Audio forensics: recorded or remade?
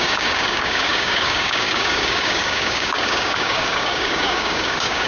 remade